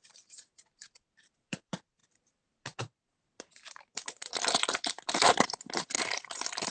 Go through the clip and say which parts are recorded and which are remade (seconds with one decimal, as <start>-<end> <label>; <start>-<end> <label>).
0.0-6.7 remade